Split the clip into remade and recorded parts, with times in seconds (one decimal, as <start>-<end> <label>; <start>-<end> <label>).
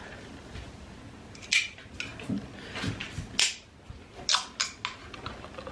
0.0-5.7 recorded